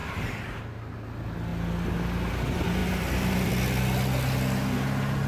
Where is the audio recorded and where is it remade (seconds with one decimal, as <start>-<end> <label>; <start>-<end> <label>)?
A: 0.0-2.8 recorded; 2.8-3.5 remade; 3.5-5.3 recorded